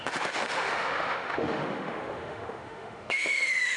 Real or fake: fake